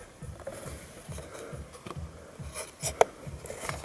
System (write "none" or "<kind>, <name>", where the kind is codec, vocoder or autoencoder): none